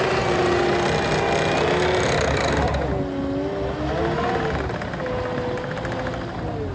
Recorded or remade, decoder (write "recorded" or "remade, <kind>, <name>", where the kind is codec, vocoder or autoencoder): recorded